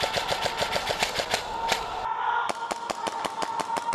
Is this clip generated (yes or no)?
no